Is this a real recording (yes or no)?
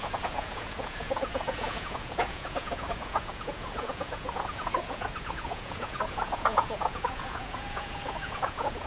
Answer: no